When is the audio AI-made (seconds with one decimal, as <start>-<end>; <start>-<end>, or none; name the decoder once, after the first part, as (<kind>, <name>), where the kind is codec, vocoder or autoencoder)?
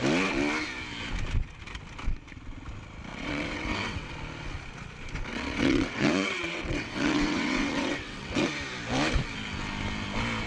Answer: 3.1-4.1 (vocoder, WaveNeXt); 5.3-8.5